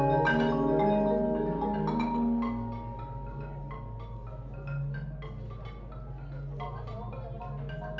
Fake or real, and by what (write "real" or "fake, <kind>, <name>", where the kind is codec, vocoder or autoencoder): real